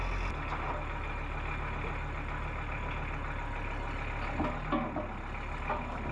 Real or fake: real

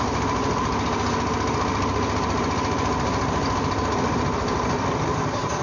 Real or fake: real